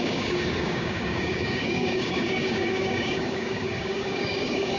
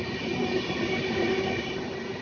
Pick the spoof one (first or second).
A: first